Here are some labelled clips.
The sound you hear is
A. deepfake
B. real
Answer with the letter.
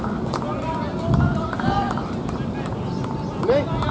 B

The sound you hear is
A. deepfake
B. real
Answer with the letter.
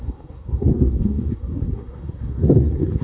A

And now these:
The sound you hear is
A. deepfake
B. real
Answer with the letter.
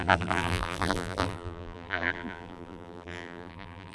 A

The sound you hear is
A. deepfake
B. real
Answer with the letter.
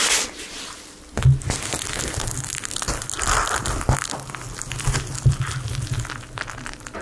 B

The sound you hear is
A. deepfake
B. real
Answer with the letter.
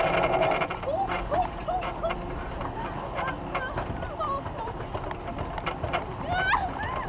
B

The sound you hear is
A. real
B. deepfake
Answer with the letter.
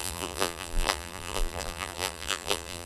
B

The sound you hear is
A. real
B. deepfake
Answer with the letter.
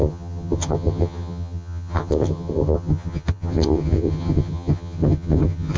B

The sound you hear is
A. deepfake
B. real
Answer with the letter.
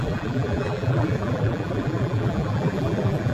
A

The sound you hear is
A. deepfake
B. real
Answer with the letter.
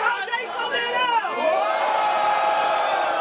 A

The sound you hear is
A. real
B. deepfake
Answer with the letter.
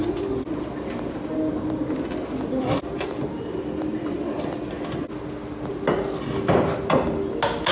A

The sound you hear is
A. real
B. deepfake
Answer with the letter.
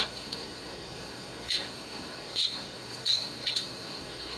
B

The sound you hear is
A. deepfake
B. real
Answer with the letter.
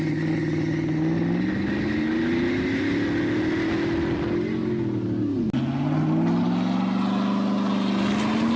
B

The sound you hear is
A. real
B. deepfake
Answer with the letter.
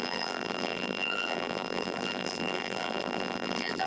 B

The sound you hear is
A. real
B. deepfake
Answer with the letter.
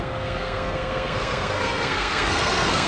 B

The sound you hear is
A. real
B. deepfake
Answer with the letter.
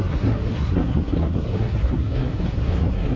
B